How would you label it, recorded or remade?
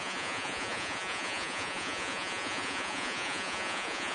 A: remade